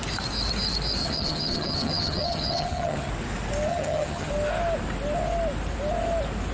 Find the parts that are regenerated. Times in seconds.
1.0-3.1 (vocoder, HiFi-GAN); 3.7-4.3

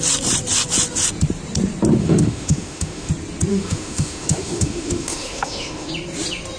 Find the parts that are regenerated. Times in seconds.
2.0-3.1 (autoencoder, DAC-VAE); 3.5-5.9

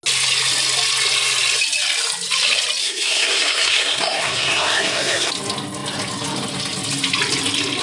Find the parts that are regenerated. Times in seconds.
2.8-5.3 (codec, SNAC)

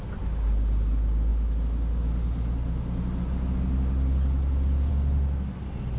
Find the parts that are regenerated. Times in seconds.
none

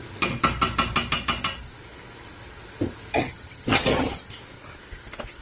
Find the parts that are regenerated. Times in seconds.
3.1-4.3 (vocoder, HiFi-GAN)

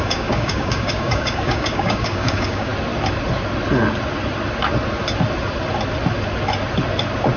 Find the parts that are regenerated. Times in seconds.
0.0-2.7 (codec, DAC)

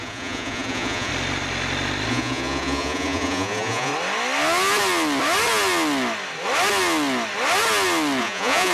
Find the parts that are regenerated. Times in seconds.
0.0-1.1 (vocoder, Vocos); 2.1-3.9; 8.2-8.7